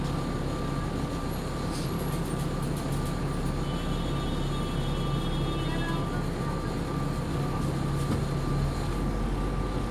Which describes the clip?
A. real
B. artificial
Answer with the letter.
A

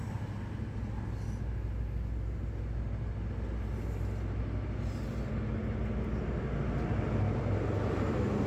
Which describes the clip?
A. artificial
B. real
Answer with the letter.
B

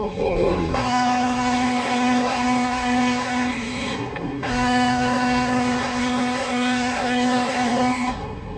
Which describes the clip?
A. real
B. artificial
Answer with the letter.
B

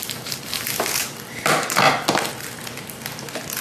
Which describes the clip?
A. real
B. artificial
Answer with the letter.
B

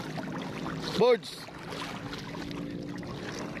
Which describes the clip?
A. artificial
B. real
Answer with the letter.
B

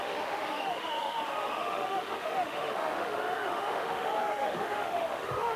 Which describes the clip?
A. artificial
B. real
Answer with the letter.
A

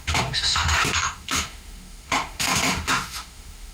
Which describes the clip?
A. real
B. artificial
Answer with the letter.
B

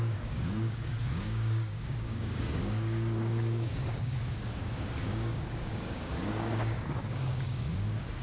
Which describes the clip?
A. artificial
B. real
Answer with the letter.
A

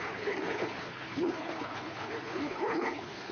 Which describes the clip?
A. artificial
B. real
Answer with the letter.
A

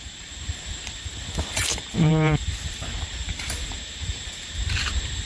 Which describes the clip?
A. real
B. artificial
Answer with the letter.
B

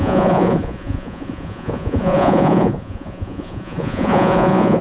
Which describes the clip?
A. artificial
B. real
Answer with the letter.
A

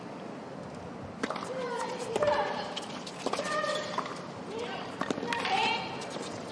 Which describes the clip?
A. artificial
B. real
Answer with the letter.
B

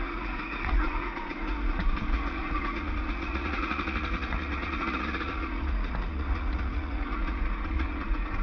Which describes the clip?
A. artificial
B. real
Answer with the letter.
A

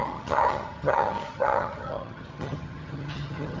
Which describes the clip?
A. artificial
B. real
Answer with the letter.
A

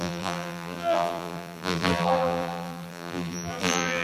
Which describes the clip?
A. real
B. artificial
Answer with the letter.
B